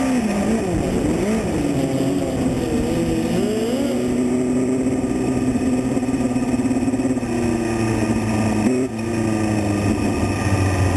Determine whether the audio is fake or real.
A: real